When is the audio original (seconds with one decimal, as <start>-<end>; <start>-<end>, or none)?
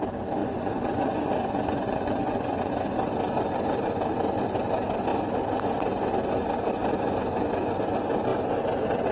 0.0-0.4; 2.7-9.1